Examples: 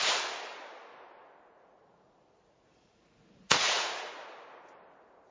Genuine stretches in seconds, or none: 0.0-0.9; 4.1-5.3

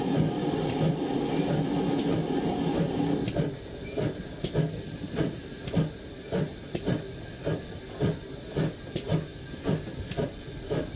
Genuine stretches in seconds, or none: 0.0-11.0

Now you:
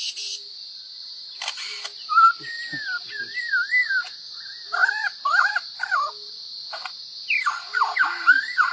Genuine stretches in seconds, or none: 0.0-8.7

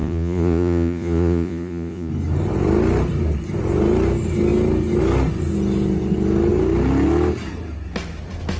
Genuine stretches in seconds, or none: 2.1-8.6